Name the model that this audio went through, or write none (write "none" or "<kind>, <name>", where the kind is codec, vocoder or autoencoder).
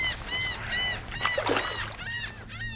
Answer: none